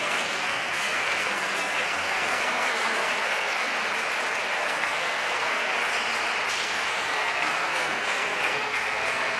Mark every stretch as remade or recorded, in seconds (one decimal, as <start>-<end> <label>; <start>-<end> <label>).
0.0-3.7 remade; 3.7-4.5 recorded; 4.5-5.7 remade; 5.7-6.5 recorded; 6.5-9.4 remade